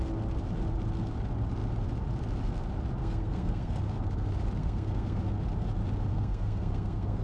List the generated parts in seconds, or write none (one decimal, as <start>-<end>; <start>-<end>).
3.0-3.8; 4.6-5.2; 6.1-7.2